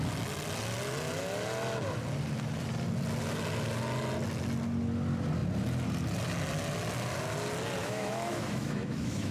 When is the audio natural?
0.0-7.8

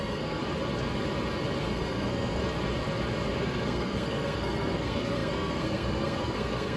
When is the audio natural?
0.4-1.6; 2.4-3.4

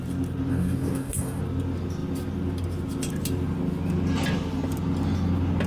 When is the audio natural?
0.0-0.5; 1.4-5.7

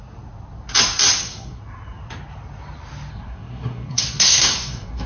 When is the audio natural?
0.0-1.2; 1.6-3.1

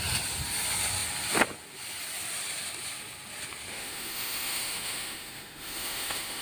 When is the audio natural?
0.0-3.7

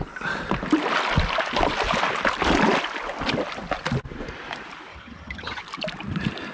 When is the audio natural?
0.0-4.9; 5.6-6.5

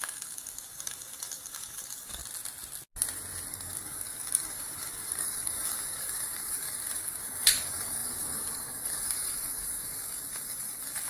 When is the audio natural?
2.2-3.5